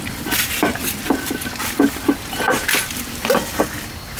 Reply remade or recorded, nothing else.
recorded